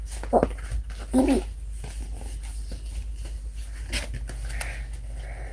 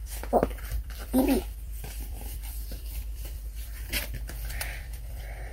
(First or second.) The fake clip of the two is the second